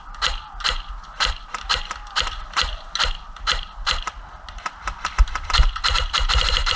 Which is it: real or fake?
real